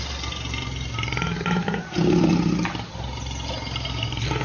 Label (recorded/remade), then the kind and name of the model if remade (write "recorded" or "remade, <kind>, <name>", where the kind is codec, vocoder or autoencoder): recorded